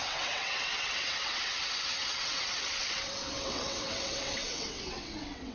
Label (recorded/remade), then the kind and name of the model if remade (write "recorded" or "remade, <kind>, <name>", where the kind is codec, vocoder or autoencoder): remade, vocoder, WaveNeXt